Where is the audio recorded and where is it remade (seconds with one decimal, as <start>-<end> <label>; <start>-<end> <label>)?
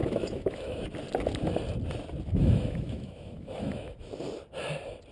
0.0-0.8 remade; 0.8-2.3 recorded; 2.3-4.1 remade; 4.1-5.1 recorded